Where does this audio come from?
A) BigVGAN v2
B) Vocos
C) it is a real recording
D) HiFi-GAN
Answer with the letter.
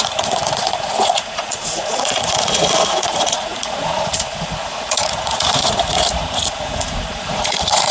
B